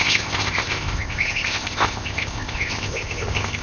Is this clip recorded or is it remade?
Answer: remade